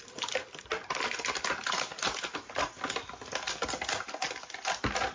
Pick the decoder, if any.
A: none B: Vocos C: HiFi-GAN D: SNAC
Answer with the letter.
A